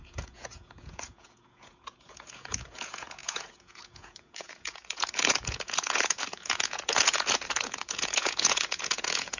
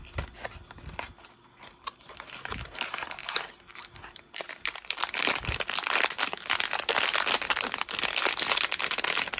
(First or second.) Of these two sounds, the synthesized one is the first